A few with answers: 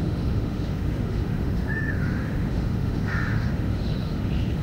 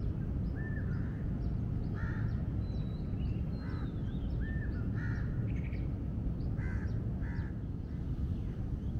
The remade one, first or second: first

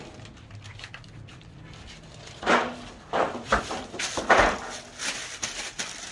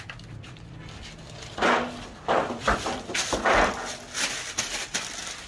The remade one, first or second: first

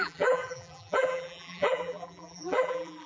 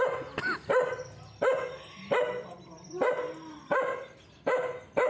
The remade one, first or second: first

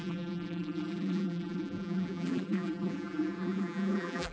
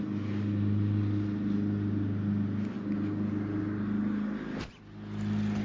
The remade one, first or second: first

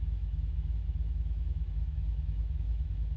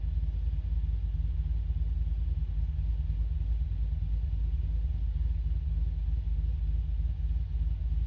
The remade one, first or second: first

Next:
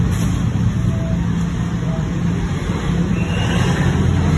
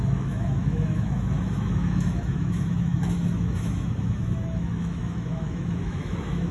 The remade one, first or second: second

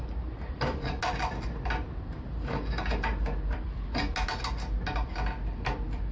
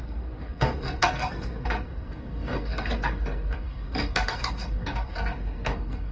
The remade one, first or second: second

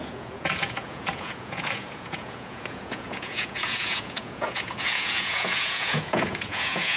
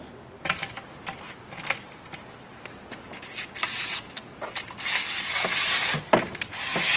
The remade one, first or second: first